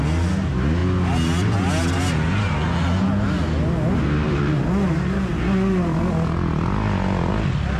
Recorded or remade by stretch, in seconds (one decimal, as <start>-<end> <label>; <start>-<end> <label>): 0.0-7.8 recorded